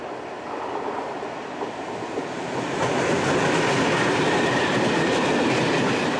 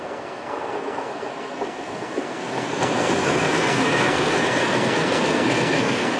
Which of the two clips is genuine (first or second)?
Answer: first